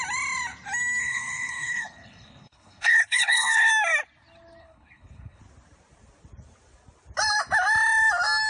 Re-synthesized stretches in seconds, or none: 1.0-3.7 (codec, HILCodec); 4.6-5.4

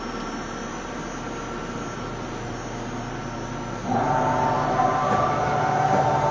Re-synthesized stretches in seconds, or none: none

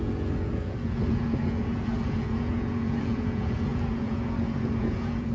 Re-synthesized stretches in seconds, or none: 0.0-5.3 (vocoder, Vocos)

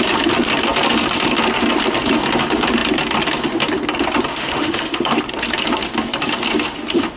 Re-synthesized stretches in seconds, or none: 4.3-5.2 (autoencoder, DAC-VAE)

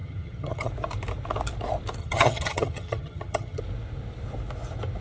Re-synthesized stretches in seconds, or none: 0.0-0.7 (vocoder, HiFi-GAN); 2.0-3.6

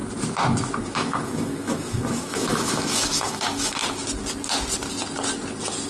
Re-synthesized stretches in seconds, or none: 0.8-3.8 (autoencoder, DAC-VAE)

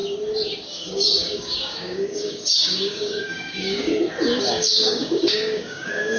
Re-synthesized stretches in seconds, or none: 0.6-3.9 (codec, DAC); 4.4-6.2

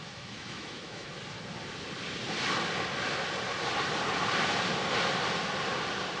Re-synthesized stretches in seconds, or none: 0.0-1.1 (autoencoder, DAC-VAE)